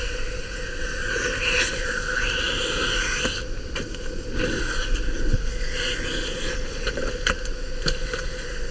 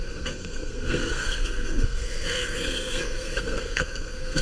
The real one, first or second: first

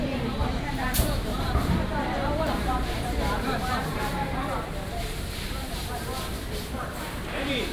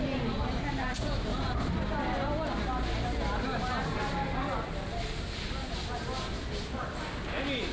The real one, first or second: second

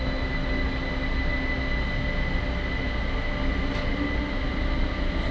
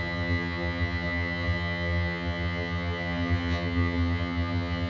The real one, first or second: first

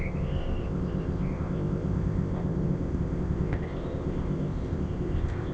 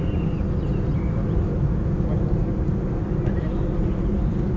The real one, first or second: second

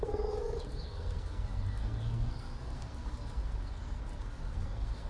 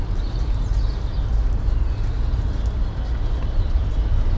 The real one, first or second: second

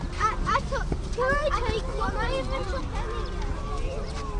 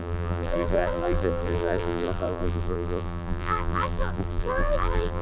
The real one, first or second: first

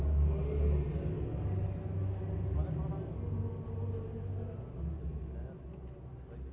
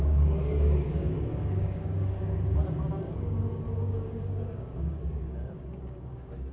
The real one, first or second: first